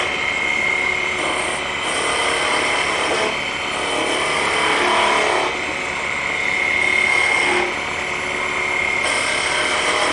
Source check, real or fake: real